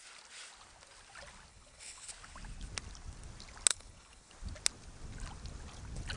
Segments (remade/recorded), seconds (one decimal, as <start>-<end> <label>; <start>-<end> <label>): 0.0-1.5 recorded; 1.5-2.1 remade; 2.1-3.7 recorded; 3.7-4.3 remade; 4.3-6.2 recorded